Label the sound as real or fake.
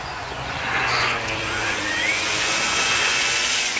fake